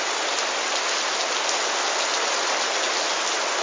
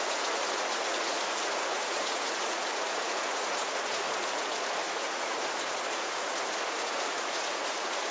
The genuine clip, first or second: first